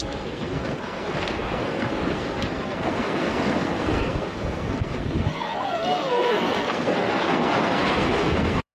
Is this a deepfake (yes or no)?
yes